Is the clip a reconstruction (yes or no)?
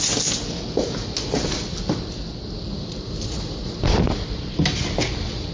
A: no